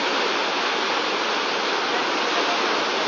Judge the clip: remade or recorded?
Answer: recorded